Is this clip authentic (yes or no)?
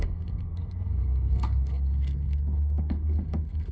no